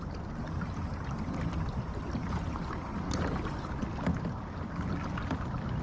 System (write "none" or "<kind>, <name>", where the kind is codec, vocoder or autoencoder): none